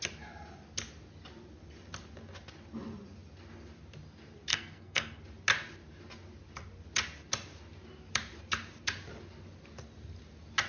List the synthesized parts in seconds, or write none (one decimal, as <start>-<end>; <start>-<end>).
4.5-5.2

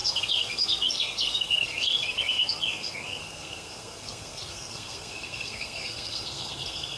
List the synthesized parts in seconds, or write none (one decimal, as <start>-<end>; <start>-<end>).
0.0-7.0

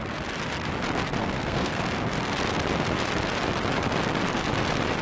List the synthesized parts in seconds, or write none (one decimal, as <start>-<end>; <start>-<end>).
1.2-1.8

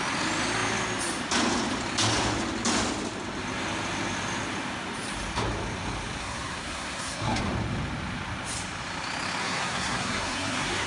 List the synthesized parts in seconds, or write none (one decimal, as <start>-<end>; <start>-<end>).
6.2-7.4; 9.4-10.9

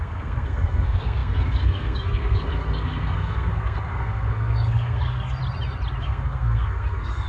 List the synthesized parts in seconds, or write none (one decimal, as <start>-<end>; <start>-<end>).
0.0-5.4; 6.0-7.3

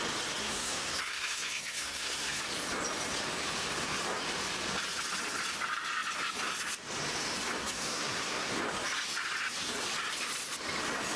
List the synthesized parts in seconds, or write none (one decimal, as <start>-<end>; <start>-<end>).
0.4-2.4; 7.6-8.6